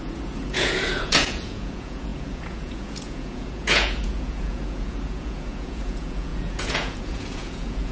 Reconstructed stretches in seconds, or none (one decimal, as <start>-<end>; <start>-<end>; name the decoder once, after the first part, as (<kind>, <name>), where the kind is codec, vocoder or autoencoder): 0.0-7.9 (vocoder, Vocos)